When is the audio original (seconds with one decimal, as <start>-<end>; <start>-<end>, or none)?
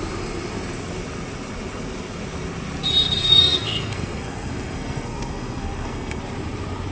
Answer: 0.0-3.2; 6.2-6.9